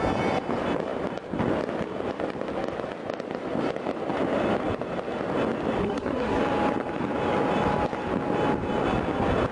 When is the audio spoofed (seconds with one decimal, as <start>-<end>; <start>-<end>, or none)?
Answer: 5.8-6.4